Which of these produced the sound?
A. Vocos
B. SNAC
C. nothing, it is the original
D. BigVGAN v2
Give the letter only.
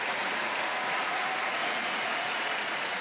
A